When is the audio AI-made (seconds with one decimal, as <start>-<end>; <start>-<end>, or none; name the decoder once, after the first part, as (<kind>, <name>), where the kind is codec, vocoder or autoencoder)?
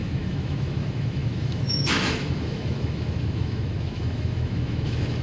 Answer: 0.0-5.2 (autoencoder, DAC-VAE)